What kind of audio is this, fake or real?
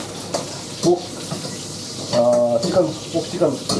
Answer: real